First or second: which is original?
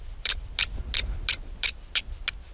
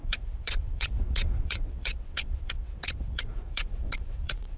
first